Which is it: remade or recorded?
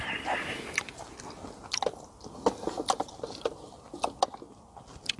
recorded